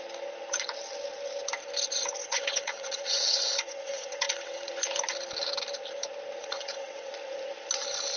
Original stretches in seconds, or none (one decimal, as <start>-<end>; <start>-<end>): 0.0-2.2; 4.7-6.4; 7.1-8.2